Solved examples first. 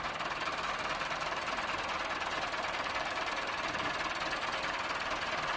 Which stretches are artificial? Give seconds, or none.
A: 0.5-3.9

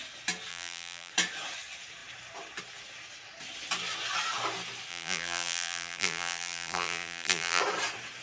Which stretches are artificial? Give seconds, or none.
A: 0.5-1.1; 4.9-7.6